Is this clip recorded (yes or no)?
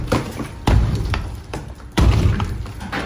no